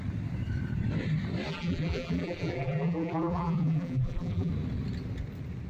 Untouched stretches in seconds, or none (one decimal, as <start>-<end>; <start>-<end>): 0.0-1.5; 4.5-5.7